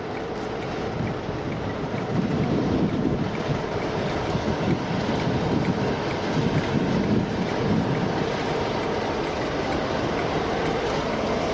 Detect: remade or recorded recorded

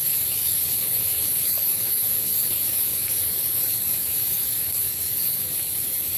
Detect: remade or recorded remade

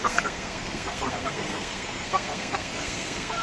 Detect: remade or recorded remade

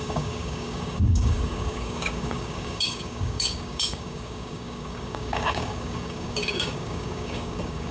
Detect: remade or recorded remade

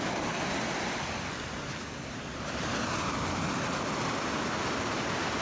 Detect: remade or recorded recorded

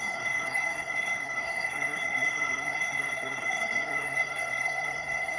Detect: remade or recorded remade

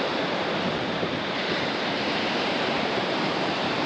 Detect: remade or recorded remade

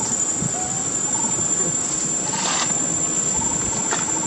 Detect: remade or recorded recorded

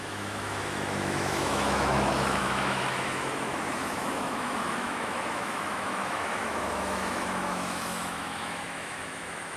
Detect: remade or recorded remade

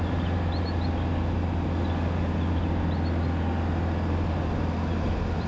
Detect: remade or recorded recorded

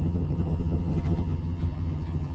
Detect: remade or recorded remade